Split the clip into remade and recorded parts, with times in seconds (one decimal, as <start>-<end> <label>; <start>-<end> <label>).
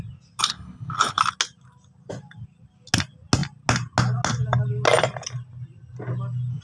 0.0-0.4 recorded; 0.4-1.2 remade; 1.2-6.6 recorded